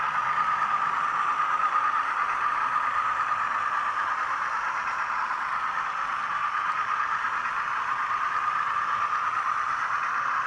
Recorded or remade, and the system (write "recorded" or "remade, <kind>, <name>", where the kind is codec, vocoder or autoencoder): recorded